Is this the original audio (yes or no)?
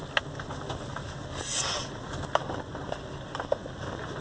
yes